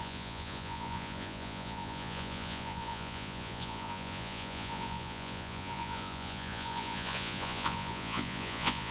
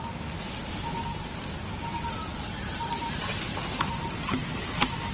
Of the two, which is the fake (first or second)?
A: first